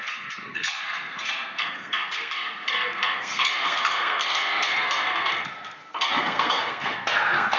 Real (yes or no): no